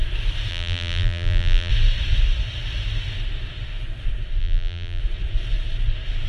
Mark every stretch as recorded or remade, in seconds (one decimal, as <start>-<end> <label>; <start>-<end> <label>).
0.0-0.5 recorded; 0.5-1.7 remade; 1.7-4.4 recorded; 4.4-5.0 remade; 5.0-6.3 recorded